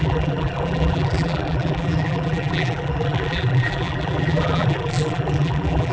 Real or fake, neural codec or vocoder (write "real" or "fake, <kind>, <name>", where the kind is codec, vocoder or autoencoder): fake, vocoder, BigVGAN v2